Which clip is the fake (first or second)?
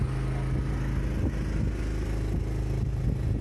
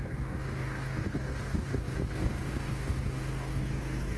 second